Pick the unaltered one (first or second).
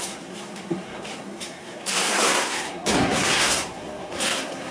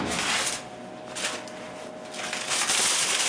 second